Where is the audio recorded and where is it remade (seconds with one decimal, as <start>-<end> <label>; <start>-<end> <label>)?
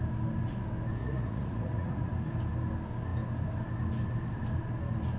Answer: 0.0-1.0 recorded; 1.0-2.1 remade; 2.1-5.2 recorded